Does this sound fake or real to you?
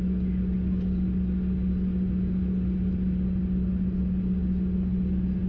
real